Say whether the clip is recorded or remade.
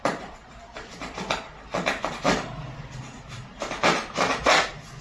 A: recorded